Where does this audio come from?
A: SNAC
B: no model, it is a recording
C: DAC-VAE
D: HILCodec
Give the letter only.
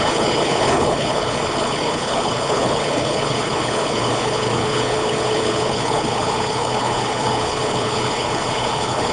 D